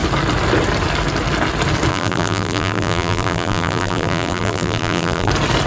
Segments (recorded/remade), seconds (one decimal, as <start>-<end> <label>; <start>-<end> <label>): 0.0-1.9 recorded; 1.9-5.3 remade; 5.3-5.7 recorded